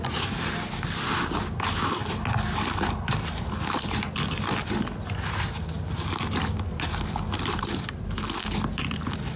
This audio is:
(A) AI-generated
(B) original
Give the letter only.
B